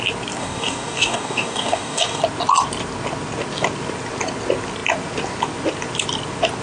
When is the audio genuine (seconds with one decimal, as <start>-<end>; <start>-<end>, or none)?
0.0-0.4; 2.2-6.6